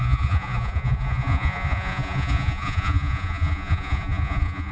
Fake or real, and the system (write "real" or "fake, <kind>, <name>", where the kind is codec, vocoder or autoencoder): fake, vocoder, Vocos